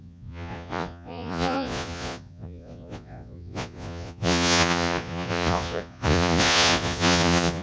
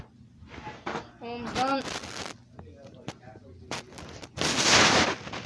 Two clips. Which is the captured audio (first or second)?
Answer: second